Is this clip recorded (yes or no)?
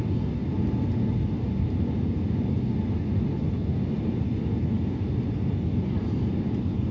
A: yes